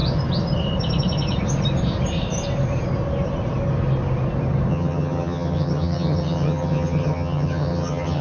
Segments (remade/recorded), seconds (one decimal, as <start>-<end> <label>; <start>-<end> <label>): 0.0-4.7 recorded; 4.7-8.2 remade